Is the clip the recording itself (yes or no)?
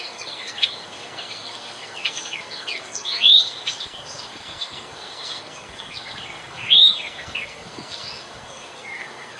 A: no